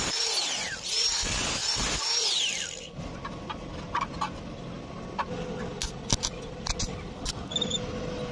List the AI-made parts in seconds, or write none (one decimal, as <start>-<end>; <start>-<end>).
none